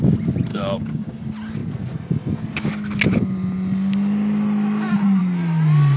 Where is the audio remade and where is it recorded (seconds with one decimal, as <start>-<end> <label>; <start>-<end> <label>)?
0.0-0.5 recorded; 0.5-1.2 remade; 1.2-6.0 recorded

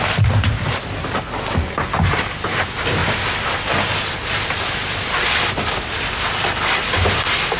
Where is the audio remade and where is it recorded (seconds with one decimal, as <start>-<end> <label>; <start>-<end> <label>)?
0.0-7.6 recorded